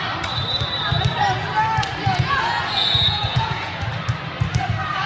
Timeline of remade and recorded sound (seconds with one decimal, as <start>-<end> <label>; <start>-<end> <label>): 0.0-2.1 recorded; 2.1-3.8 remade; 3.8-5.1 recorded